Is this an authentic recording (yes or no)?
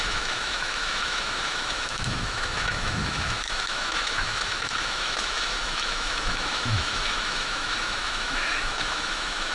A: no